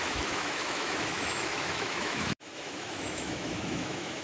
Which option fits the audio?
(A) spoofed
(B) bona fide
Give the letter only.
A